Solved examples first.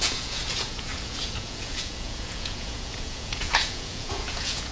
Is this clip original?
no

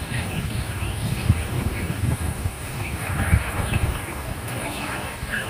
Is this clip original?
no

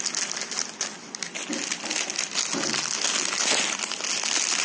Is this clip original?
yes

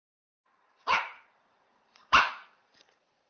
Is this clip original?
no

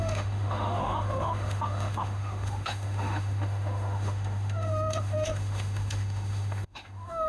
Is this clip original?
no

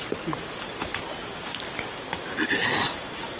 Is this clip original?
yes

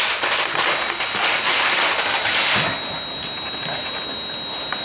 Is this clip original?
yes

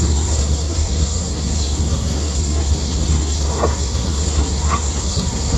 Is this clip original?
no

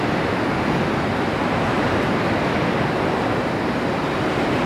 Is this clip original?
yes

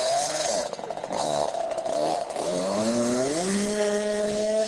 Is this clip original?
no